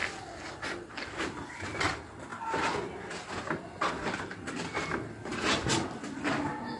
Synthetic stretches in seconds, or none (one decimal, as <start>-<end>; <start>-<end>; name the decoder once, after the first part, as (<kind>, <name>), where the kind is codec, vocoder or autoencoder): none